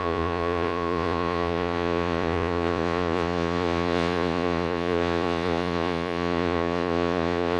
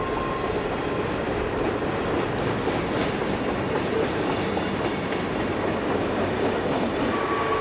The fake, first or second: first